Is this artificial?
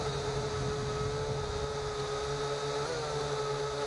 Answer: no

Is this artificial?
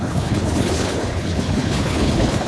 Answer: yes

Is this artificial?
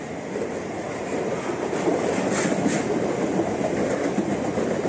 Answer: no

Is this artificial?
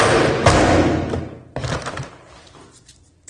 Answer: no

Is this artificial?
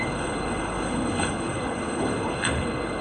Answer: yes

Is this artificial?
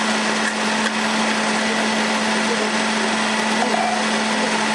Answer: no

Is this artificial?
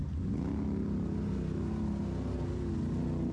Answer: no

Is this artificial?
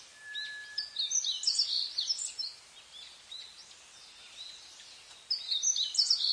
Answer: no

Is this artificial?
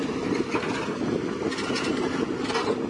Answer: no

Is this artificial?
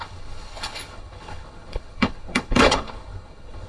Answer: yes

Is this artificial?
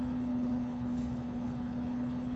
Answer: yes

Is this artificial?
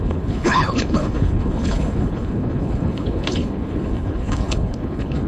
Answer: yes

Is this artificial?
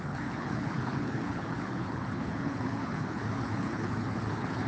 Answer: yes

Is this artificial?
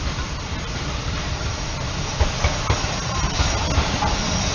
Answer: no